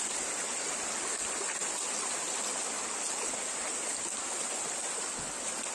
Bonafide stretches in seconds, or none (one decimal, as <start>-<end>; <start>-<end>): 0.0-5.7